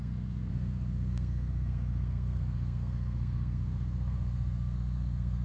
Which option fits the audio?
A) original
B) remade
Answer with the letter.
B